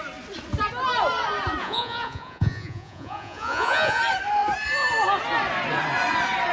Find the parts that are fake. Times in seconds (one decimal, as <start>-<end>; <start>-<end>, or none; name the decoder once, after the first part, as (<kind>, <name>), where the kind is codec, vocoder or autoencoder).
1.6-4.0 (vocoder, Vocos)

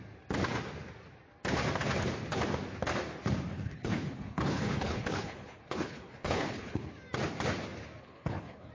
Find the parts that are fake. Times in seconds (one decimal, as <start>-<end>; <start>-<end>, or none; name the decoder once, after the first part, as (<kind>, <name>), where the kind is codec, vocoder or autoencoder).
3.5-6.9 (codec, HILCodec); 8.0-8.7

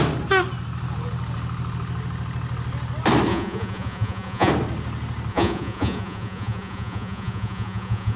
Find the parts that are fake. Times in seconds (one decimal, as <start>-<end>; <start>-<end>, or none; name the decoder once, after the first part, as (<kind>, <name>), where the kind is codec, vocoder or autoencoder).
3.3-4.5 (vocoder, Vocos); 5.3-8.2